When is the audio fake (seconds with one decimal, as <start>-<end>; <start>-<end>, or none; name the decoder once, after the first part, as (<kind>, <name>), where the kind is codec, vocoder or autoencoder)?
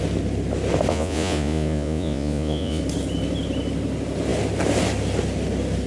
0.9-2.8 (vocoder, Vocos)